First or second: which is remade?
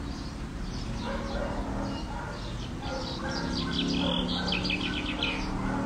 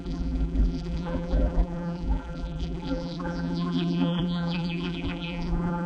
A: second